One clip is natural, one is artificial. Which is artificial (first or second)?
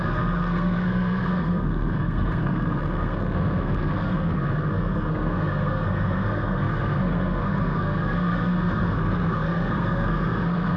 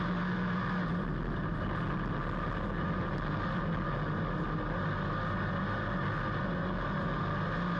first